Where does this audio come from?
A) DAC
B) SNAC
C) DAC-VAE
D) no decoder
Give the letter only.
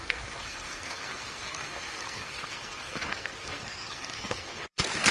B